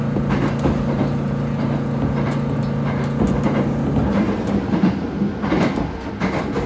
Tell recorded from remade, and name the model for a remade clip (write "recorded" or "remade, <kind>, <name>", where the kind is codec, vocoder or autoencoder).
recorded